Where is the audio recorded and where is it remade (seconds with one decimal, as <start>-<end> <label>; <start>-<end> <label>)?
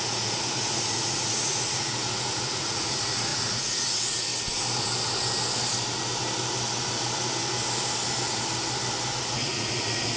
0.0-4.3 remade; 4.3-9.2 recorded; 9.2-10.2 remade